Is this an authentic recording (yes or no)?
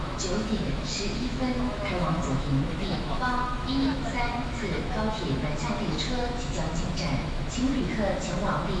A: no